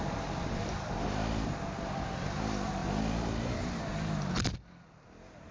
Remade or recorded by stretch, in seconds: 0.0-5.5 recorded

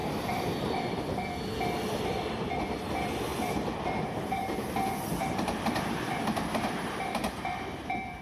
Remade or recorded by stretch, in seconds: 0.0-1.2 remade; 1.2-3.3 recorded; 3.3-8.2 remade